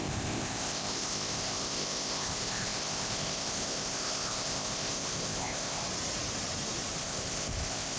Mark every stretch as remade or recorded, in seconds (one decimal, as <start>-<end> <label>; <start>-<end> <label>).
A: 0.0-5.8 remade; 5.8-7.0 recorded; 7.0-8.0 remade